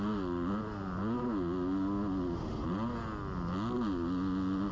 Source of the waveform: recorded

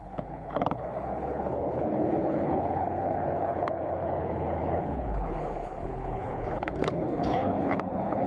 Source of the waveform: remade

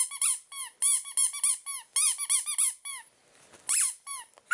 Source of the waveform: recorded